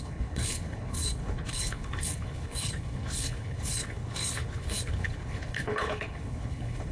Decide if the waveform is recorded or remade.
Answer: remade